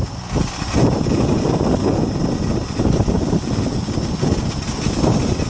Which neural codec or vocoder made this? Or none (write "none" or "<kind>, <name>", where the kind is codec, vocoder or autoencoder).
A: none